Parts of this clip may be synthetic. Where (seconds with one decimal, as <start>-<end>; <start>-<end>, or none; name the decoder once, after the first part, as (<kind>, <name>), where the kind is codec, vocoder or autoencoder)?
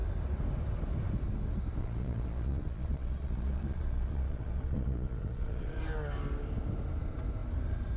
1.8-5.8 (vocoder, Vocos)